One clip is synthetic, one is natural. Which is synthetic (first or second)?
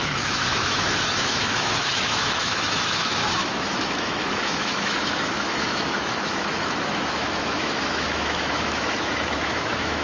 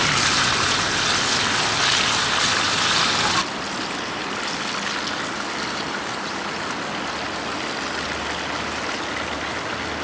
first